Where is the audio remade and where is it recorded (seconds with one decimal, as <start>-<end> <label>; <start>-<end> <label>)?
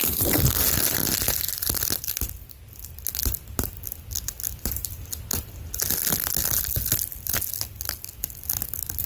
0.0-1.0 recorded; 1.0-1.7 remade; 1.7-9.1 recorded